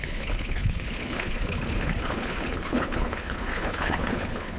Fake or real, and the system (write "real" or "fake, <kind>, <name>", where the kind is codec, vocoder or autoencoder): fake, codec, HILCodec